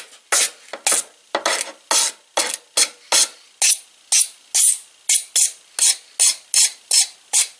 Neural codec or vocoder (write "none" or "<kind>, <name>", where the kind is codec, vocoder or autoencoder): none